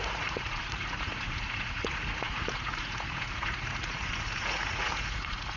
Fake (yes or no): yes